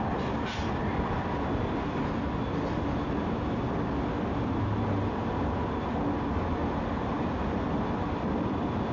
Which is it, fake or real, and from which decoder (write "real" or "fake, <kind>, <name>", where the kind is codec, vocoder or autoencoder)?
real